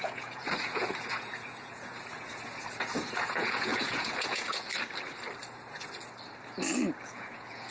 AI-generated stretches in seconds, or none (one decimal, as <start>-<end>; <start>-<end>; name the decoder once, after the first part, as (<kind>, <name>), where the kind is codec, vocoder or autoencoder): 0.0-4.7 (vocoder, Vocos); 7.0-7.7